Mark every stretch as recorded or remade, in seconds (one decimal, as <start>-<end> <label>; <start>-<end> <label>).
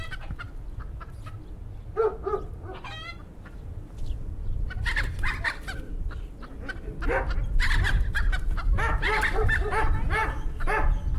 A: 0.0-4.4 recorded; 4.4-6.3 remade; 6.3-11.2 recorded